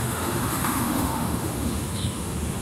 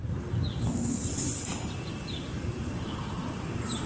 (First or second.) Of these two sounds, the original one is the second